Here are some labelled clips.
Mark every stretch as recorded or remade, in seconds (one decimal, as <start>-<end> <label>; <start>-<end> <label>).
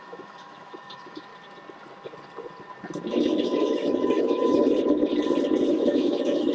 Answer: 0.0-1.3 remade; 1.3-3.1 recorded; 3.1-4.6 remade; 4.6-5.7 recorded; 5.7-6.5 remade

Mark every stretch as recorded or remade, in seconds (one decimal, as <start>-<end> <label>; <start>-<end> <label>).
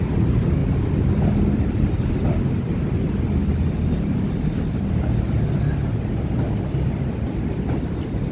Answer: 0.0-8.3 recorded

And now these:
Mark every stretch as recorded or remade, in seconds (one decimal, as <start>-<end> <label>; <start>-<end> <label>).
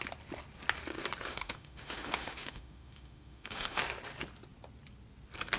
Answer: 0.0-1.3 recorded; 1.3-3.8 remade; 3.8-5.6 recorded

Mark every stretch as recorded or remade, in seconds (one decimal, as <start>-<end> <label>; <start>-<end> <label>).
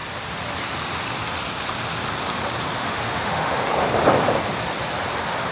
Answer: 0.0-2.8 recorded; 2.8-3.6 remade; 3.6-5.5 recorded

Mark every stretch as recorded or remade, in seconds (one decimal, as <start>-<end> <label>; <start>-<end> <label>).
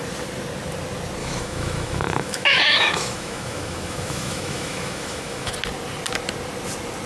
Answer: 0.0-1.2 recorded; 1.2-5.5 remade; 5.5-7.1 recorded